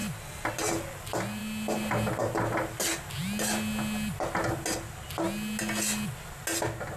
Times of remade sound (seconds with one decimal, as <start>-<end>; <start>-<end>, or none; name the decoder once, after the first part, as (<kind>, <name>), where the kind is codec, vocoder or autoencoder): none